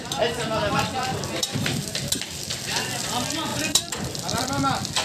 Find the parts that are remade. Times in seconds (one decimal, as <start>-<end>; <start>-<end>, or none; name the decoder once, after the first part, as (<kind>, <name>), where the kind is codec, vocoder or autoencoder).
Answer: 1.4-2.0 (vocoder, BigVGAN v2); 3.5-4.4